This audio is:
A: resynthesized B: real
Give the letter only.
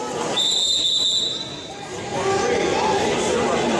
B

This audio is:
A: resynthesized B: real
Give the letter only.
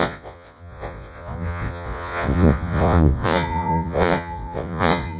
A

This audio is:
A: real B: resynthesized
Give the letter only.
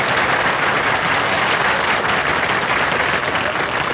A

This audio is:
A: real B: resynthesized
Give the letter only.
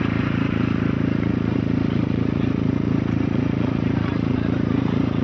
B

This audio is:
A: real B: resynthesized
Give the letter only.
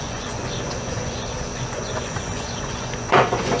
B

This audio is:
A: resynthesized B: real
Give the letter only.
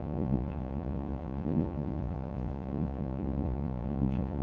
A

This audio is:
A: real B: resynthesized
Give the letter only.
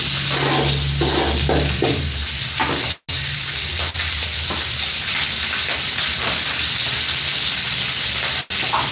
A